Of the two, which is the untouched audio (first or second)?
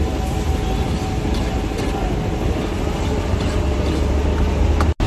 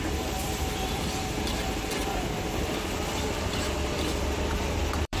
first